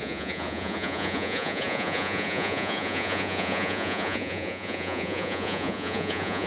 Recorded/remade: remade